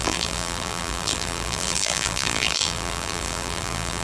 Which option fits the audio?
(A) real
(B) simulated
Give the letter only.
B